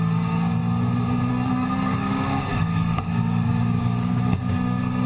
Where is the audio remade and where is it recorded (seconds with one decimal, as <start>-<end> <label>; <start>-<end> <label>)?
0.0-0.6 remade; 0.6-1.3 recorded; 1.3-5.1 remade